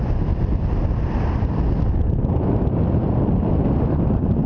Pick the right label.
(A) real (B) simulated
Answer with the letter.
A